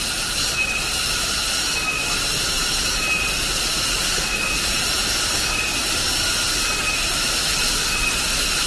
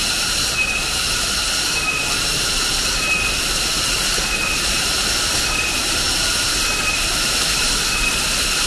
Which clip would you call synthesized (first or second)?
second